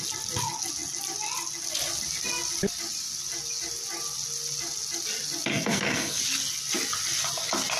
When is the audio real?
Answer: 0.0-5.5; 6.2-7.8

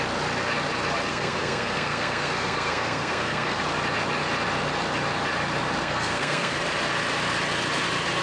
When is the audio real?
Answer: 0.0-1.1; 3.6-5.8; 6.6-8.2

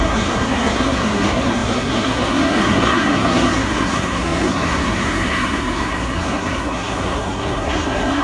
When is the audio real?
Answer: none